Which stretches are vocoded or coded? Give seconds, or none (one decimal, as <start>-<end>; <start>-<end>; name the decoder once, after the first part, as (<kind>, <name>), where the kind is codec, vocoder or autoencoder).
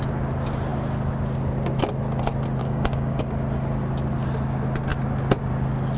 2.6-3.2 (codec, DAC)